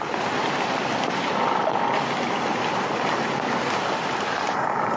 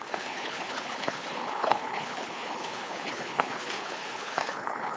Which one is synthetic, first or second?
second